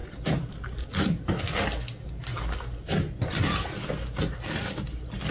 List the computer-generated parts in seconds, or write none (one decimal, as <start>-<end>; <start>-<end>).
0.0-1.4